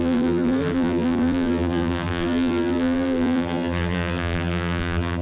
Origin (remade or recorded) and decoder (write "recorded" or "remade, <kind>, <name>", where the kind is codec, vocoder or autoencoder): remade, vocoder, BigVGAN v2